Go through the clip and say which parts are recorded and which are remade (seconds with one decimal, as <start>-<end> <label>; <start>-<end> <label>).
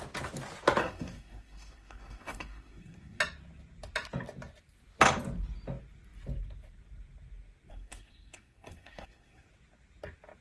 0.0-0.8 recorded; 0.8-3.2 remade; 3.2-7.7 recorded; 7.7-9.5 remade; 9.5-10.4 recorded